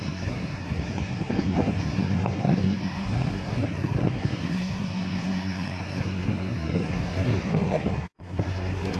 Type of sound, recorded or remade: remade